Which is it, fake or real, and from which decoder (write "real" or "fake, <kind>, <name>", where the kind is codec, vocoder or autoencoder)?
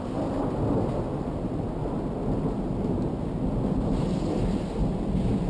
real